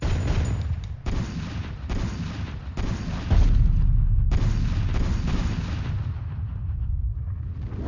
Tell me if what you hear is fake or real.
real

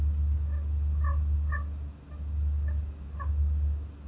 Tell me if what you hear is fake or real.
real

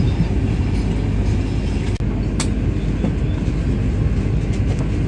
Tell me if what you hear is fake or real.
real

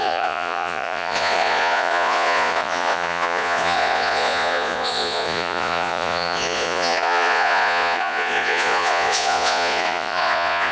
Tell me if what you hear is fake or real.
fake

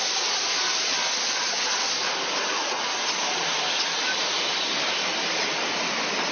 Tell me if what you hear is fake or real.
real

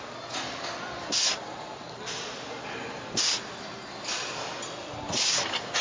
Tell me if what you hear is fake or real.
real